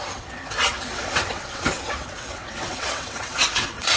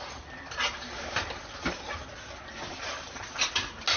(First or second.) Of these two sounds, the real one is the second